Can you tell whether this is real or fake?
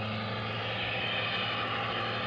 real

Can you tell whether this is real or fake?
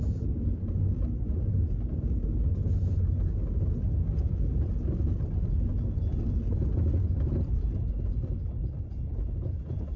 real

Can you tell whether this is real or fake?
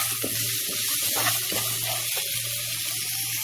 real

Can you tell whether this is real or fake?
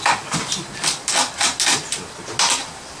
real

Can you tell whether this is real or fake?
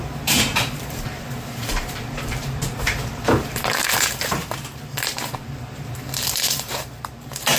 fake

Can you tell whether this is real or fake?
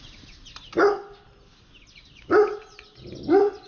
real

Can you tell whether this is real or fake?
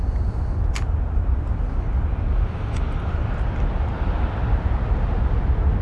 real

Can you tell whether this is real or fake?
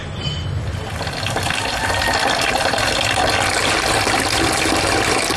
real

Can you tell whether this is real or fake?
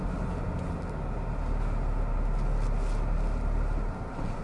real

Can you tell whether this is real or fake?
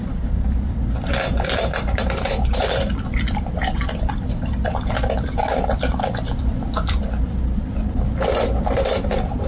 fake